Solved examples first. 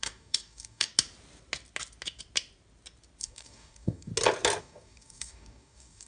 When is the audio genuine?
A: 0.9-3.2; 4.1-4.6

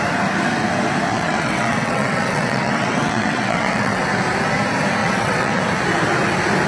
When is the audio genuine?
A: 0.0-1.1; 4.0-5.0; 5.6-6.7